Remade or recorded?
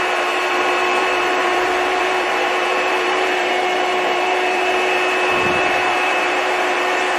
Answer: remade